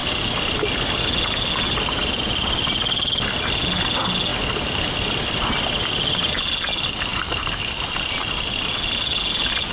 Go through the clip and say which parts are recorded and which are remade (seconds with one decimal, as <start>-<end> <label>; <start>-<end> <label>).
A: 0.0-0.9 remade; 0.9-7.1 recorded; 7.1-8.5 remade; 8.5-9.7 recorded